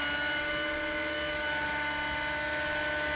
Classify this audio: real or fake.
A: real